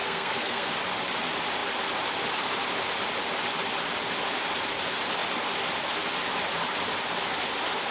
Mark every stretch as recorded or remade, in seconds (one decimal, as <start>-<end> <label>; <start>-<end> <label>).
0.0-0.7 remade; 0.7-7.9 recorded